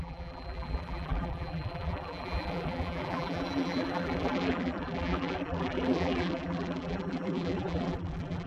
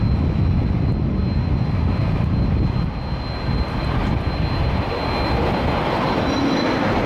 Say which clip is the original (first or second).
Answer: second